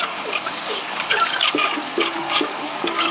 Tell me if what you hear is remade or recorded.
remade